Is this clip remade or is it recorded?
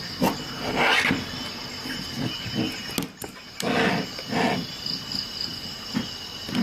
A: recorded